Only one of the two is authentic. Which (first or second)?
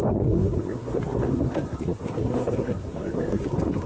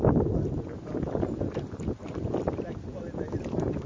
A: second